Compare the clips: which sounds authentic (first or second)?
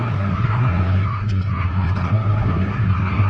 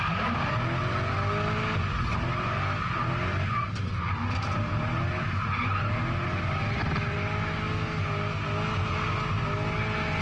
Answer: second